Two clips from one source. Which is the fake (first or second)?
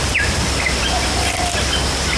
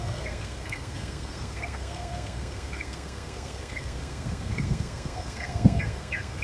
second